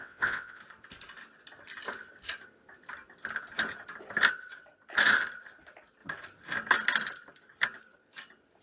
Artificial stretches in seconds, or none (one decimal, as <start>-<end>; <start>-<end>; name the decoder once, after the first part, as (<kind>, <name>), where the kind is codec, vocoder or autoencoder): 0.0-0.6 (vocoder, WaveNeXt)